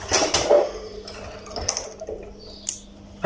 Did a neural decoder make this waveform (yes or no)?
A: no